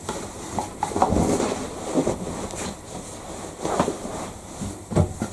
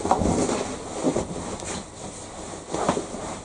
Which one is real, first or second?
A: second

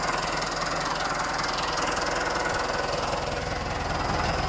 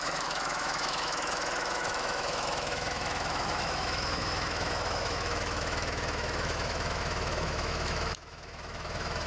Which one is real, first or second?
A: first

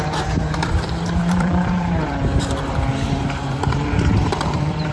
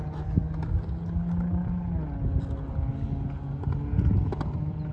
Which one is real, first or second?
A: second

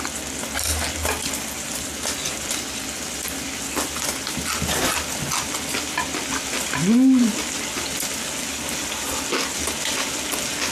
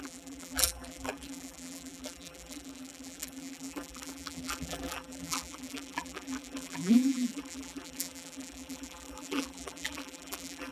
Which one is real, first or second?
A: first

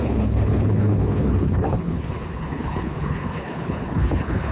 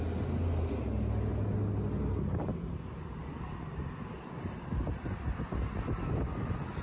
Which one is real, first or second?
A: second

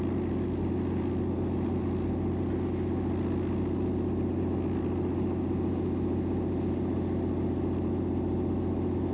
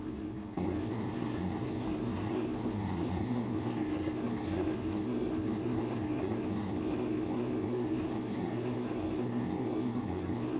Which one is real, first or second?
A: first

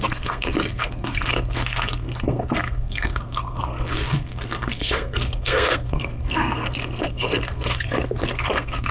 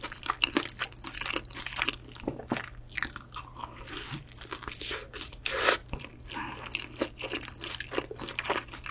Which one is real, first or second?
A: second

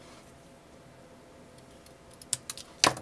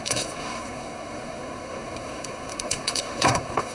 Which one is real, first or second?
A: first